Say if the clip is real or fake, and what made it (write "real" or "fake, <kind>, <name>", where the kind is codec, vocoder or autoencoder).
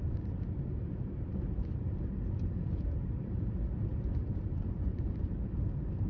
fake, vocoder, BigVGAN v2